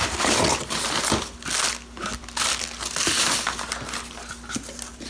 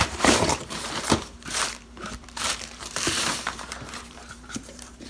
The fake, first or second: second